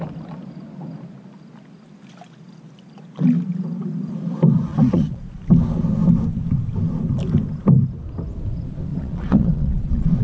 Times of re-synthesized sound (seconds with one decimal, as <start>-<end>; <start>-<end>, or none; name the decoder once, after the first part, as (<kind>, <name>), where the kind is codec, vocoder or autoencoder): 4.7-5.4 (vocoder, Vocos); 8.9-10.2

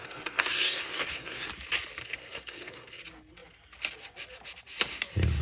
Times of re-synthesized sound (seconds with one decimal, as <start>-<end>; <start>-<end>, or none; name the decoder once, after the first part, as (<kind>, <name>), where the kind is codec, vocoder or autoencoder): 0.0-1.5 (codec, SNAC); 2.0-3.0